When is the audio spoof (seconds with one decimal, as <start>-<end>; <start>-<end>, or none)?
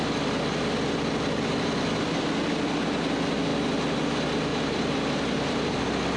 4.5-5.8